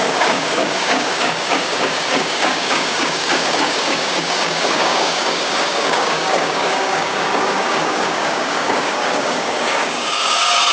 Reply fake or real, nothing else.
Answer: fake